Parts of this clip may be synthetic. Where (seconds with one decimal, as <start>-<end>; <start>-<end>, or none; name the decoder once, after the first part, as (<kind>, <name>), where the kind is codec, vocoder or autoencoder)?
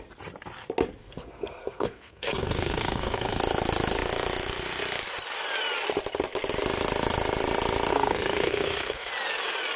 1.0-3.4 (codec, SNAC); 7.9-9.1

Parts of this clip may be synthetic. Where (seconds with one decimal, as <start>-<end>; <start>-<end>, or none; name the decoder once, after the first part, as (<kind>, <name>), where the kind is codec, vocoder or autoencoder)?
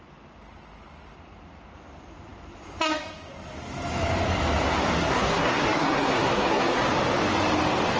5.0-6.8 (codec, SNAC)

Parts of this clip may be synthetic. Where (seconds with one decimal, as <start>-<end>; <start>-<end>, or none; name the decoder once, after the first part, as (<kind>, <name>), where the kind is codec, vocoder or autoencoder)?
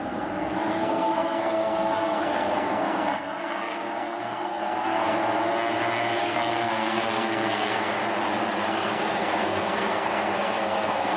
0.0-5.2 (codec, SNAC); 6.2-8.0; 8.7-11.2